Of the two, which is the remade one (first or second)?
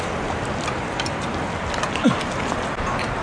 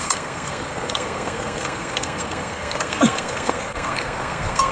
second